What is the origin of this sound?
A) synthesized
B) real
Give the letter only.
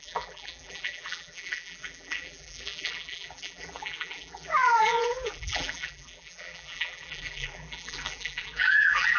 A